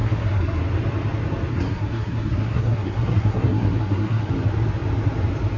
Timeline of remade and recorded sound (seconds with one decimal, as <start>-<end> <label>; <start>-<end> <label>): 0.0-0.6 remade; 0.6-1.5 recorded; 1.5-4.3 remade; 4.3-5.6 recorded